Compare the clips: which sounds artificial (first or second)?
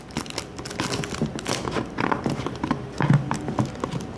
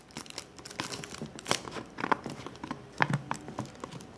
second